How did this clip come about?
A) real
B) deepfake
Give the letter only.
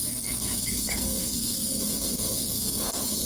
B